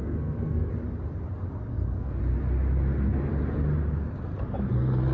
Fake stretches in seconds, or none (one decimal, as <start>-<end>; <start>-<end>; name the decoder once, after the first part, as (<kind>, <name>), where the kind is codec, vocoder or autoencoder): 0.0-0.7 (codec, SNAC); 1.7-2.2